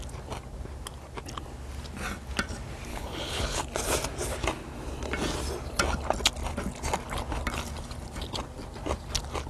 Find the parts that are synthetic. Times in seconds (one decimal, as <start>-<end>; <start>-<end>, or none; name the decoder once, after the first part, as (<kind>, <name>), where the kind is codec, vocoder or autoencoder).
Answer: 2.9-3.6 (codec, HILCodec)